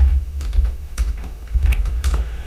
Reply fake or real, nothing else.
fake